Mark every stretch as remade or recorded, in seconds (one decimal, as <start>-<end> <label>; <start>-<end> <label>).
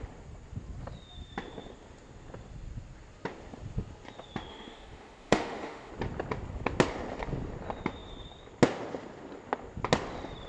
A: 0.0-4.5 recorded; 4.5-5.9 remade; 5.9-10.5 recorded